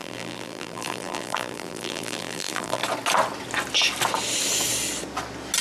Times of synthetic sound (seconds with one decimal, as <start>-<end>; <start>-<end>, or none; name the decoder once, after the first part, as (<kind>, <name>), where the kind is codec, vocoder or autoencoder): 0.0-2.8 (vocoder, BigVGAN v2)